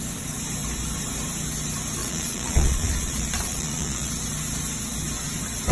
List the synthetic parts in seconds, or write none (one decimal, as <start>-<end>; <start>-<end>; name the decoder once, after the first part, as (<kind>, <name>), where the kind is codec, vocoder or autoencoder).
2.0-4.1 (vocoder, Vocos)